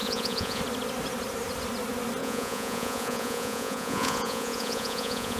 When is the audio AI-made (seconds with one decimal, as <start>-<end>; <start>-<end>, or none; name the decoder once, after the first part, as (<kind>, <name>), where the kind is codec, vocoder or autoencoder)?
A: 0.0-0.6 (vocoder, Vocos); 2.2-5.4